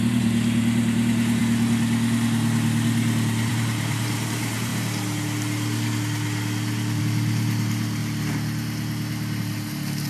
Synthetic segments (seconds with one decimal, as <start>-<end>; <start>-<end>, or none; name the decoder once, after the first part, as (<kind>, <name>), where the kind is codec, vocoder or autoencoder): 0.0-1.4 (vocoder, BigVGAN v2); 3.5-4.7; 7.0-8.0; 9.4-10.1